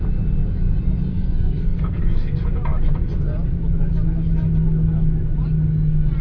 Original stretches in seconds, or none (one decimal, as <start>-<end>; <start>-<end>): 0.0-1.1; 2.0-6.2